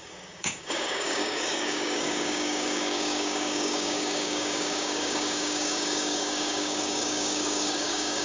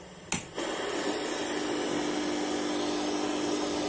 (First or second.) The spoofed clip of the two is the first